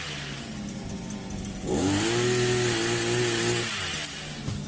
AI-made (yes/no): no